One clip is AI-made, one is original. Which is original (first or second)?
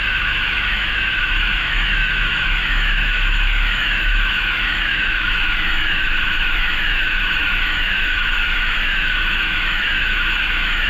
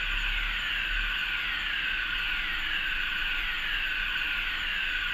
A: second